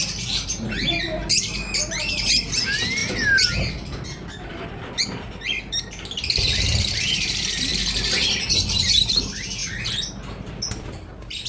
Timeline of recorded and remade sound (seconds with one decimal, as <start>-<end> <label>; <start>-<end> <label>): 0.0-11.5 recorded